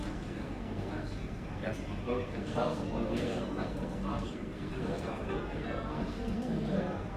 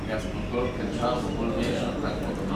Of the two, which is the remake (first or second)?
first